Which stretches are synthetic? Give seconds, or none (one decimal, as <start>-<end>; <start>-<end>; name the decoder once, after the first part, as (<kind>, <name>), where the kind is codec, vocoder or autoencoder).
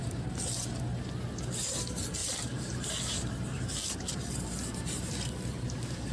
2.2-6.1 (vocoder, BigVGAN v2)